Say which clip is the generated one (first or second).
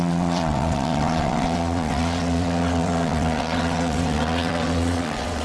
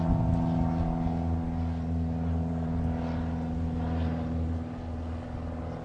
first